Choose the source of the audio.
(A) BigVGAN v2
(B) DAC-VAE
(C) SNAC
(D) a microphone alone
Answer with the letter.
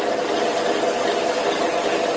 D